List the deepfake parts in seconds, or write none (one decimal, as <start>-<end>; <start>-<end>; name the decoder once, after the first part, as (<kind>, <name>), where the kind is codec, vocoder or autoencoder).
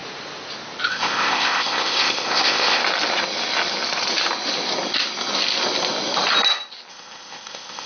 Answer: 0.9-2.8 (codec, ZipCodec); 6.9-7.9